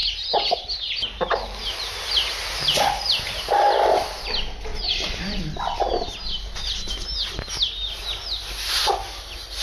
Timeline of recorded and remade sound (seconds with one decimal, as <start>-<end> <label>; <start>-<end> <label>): 0.0-4.7 recorded; 4.7-5.4 remade; 5.4-9.6 recorded